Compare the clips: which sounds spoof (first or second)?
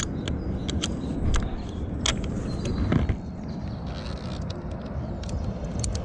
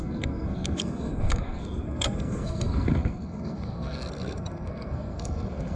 second